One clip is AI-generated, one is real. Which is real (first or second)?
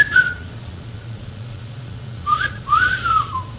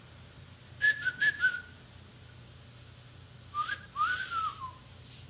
second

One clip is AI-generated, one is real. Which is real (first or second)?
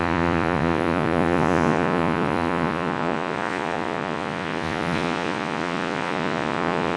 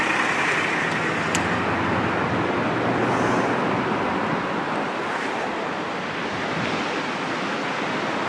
second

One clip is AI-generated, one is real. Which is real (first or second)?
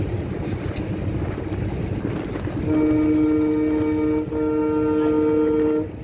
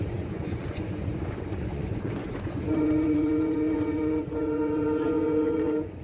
first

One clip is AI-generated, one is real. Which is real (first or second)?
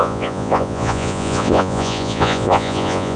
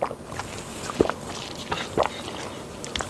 second